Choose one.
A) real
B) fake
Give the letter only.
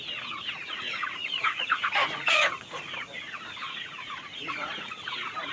B